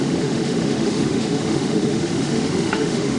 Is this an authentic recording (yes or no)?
no